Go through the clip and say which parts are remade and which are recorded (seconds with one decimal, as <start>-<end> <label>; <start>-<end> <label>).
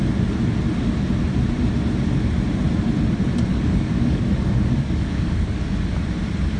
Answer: 0.0-3.5 recorded; 3.5-6.0 remade; 6.0-6.6 recorded